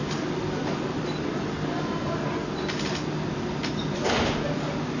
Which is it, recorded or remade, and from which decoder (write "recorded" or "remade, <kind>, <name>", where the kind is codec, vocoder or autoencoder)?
recorded